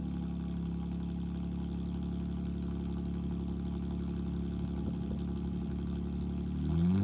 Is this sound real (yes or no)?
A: yes